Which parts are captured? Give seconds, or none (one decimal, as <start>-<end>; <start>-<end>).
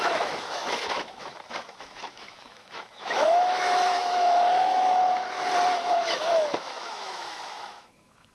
5.0-5.8